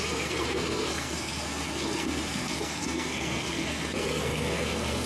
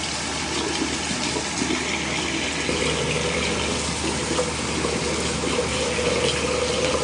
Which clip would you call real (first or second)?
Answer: second